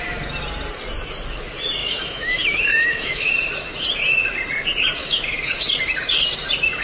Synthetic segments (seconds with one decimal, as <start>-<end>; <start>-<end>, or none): 1.8-3.3; 5.0-5.5